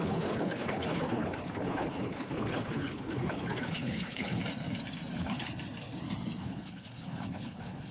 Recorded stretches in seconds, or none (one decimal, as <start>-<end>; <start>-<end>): 4.4-5.1; 5.5-6.4